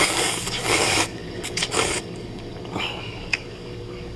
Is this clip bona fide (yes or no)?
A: no